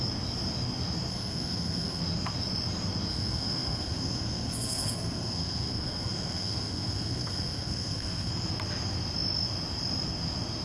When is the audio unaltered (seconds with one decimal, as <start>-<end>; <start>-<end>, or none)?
0.0-1.1; 2.0-3.1; 8.3-10.6